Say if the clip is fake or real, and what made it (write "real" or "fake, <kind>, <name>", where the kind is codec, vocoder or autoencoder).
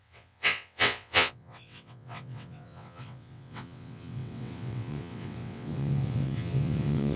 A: fake, vocoder, WaveNeXt